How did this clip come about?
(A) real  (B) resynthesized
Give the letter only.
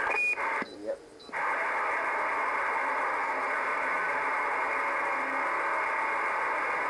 A